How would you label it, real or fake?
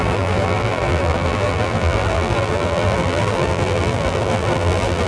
fake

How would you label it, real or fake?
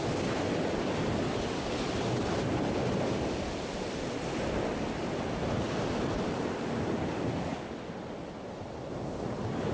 real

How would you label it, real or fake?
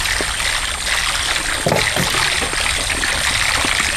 real